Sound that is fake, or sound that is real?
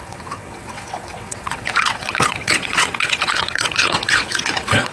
fake